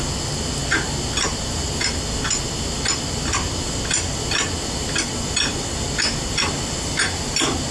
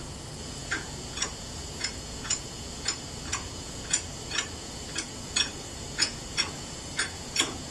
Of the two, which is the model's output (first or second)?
second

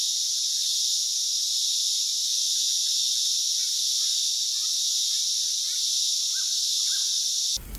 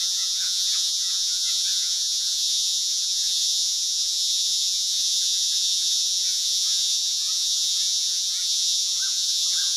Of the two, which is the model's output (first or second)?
second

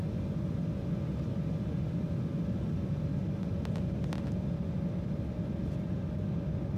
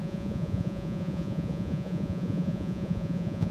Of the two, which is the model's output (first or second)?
second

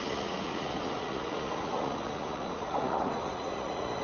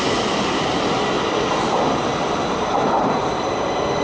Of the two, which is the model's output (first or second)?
first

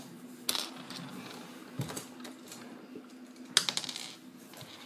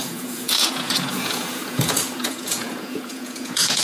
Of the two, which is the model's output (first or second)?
second